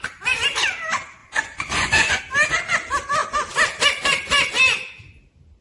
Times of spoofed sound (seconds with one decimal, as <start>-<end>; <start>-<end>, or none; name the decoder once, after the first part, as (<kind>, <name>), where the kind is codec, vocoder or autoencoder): 1.2-2.2 (vocoder, Vocos)